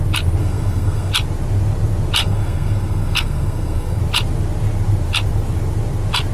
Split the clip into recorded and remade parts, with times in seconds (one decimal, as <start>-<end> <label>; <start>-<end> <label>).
0.0-0.4 recorded; 0.4-1.1 remade; 1.1-2.2 recorded; 2.2-4.0 remade; 4.0-6.3 recorded